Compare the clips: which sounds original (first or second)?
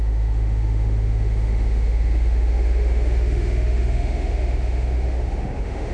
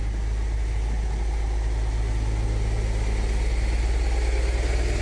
second